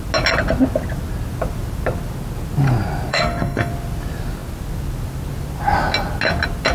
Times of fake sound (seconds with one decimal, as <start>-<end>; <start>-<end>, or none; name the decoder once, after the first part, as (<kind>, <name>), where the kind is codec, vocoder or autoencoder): 3.1-3.7 (codec, SNAC)